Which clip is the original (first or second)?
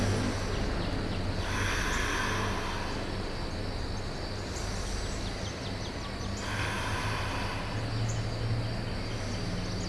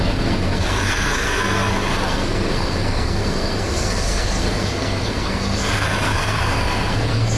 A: first